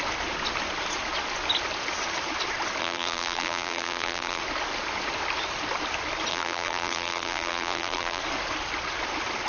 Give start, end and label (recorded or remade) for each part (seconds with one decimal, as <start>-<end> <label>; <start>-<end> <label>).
0.0-2.8 recorded; 2.8-4.4 remade; 4.4-6.3 recorded; 6.3-8.2 remade; 8.2-9.5 recorded